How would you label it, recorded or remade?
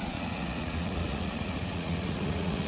remade